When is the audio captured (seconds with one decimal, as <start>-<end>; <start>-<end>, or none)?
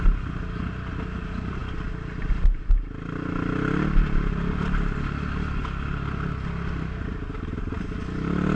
0.0-8.6